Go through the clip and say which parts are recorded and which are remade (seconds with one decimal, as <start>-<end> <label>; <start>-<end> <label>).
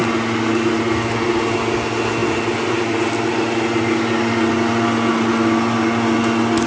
0.0-6.7 recorded